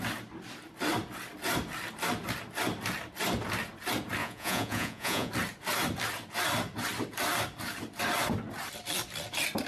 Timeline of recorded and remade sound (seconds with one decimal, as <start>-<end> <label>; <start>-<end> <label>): 0.0-4.2 recorded; 4.2-5.3 remade; 5.3-9.7 recorded